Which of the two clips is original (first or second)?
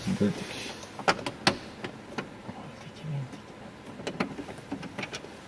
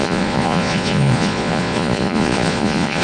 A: first